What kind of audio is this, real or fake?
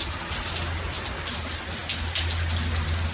real